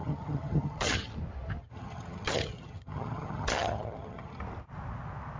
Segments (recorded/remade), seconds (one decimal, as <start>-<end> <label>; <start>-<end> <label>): 0.0-1.1 remade; 1.1-1.6 recorded; 1.6-4.4 remade; 4.4-5.4 recorded